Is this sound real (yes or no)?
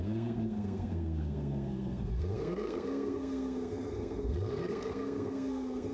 no